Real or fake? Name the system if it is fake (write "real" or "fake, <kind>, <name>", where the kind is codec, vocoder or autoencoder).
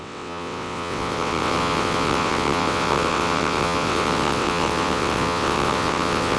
fake, vocoder, WaveNeXt